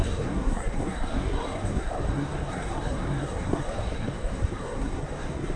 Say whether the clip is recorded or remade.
remade